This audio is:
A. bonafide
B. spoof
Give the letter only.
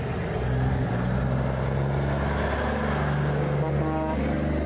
A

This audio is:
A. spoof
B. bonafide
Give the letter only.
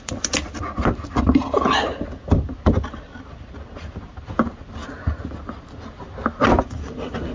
B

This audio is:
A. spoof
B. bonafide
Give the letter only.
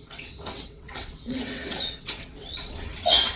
A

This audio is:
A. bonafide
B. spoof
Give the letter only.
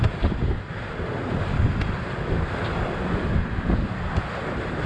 A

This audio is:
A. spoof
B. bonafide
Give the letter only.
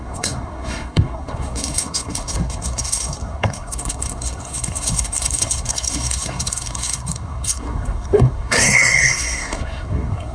A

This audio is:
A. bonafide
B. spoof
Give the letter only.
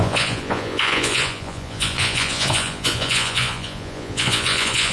B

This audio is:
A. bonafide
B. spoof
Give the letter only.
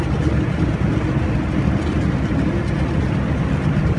A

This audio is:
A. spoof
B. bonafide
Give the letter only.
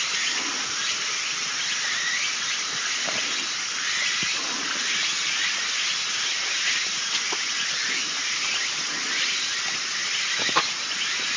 B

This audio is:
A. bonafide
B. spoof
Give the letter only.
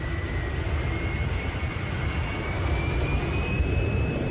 B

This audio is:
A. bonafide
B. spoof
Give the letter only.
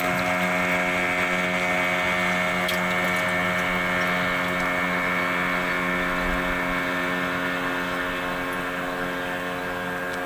A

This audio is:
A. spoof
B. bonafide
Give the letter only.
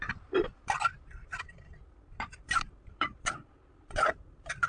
A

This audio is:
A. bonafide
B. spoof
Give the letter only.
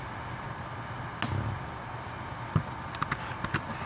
A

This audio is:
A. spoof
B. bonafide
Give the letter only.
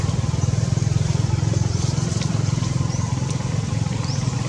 A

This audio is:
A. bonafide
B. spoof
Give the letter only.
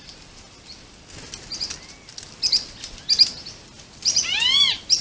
A